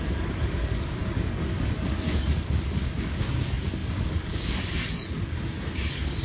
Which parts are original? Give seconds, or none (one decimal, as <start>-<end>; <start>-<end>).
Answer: none